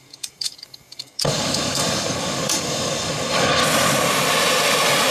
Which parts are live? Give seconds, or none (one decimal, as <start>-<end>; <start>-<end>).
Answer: 3.6-5.1